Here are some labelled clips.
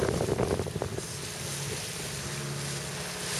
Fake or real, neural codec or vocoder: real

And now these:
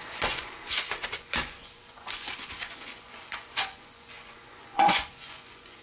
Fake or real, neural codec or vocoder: fake, vocoder, Vocos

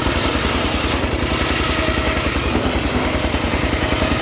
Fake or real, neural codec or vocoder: real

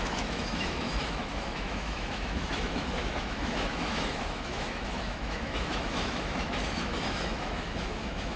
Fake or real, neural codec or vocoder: fake, autoencoder, DAC-VAE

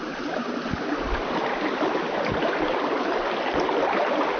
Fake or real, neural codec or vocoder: real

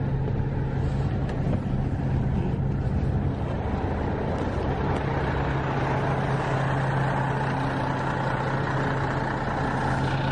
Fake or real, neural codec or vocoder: real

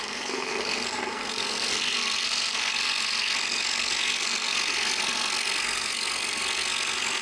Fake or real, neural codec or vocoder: fake, codec, SNAC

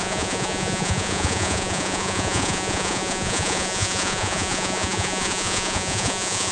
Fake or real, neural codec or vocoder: fake, vocoder, Vocos